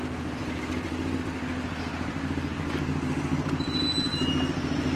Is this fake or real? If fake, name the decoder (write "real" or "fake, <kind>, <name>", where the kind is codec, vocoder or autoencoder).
real